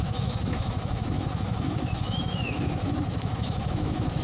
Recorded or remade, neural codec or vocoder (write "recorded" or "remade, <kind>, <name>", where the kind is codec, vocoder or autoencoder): remade, autoencoder, DAC-VAE